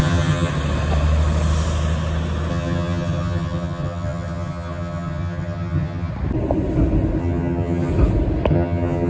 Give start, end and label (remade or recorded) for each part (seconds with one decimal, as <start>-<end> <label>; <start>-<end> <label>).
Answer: 0.0-0.5 remade; 0.5-2.5 recorded; 2.5-6.1 remade; 6.1-7.2 recorded; 7.2-7.9 remade; 7.9-8.5 recorded; 8.5-9.1 remade